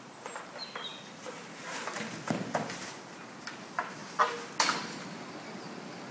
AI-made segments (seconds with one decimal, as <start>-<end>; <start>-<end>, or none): none